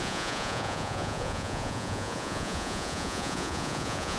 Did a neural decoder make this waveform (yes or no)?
yes